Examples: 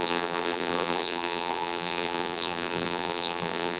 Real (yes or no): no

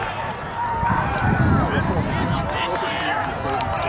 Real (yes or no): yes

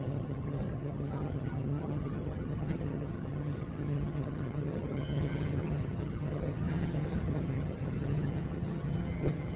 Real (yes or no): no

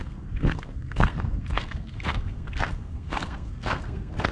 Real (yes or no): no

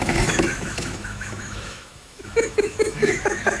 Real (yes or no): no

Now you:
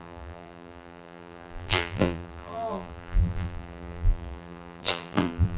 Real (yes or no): no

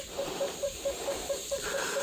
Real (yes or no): no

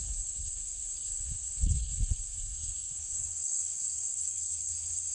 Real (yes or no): no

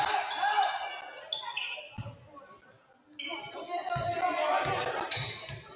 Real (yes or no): yes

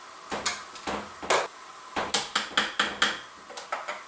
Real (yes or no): yes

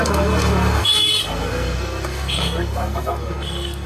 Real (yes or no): no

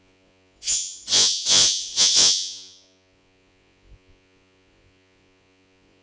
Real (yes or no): no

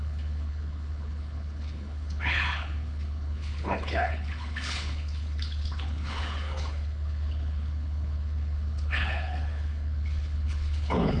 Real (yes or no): no